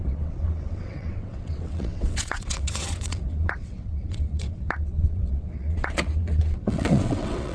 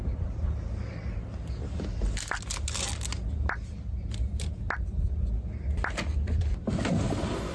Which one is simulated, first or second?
first